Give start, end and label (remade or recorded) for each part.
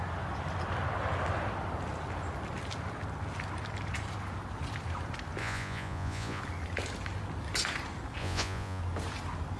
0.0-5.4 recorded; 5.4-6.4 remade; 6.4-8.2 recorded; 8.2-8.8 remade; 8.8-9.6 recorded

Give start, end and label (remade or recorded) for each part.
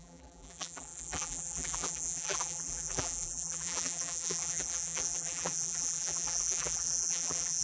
0.0-7.6 remade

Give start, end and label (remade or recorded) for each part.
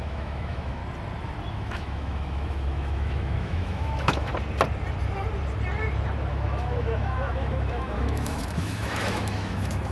0.0-0.8 remade; 0.8-1.5 recorded; 1.5-4.3 remade; 4.3-6.3 recorded; 6.3-9.9 remade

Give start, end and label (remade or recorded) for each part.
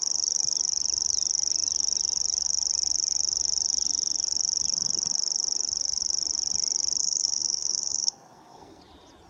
0.0-7.0 recorded; 7.0-8.8 remade; 8.8-9.3 recorded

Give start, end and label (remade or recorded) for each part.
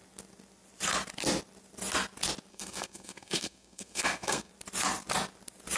0.0-2.5 recorded; 2.5-4.5 remade; 4.5-5.8 recorded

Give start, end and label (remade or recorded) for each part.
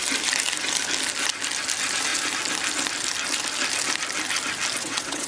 0.0-4.8 recorded; 4.8-5.3 remade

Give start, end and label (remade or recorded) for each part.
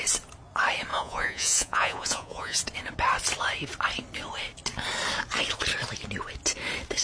0.0-0.9 recorded; 0.9-2.6 remade; 2.6-7.0 recorded